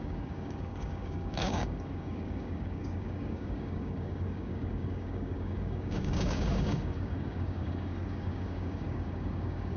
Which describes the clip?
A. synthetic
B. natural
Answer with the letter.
A